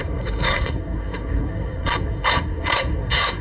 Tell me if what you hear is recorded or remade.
remade